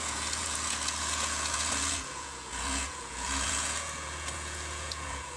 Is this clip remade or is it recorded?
remade